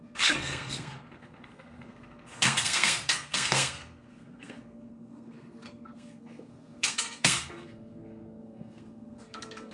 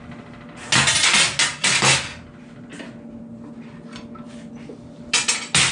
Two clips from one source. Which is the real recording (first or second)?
second